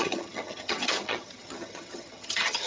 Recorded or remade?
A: remade